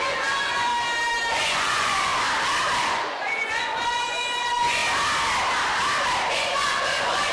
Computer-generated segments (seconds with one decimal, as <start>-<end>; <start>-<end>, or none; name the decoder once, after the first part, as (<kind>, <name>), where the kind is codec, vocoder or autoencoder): 0.0-0.7 (vocoder, Vocos); 1.3-2.1; 2.8-4.8; 6.3-7.3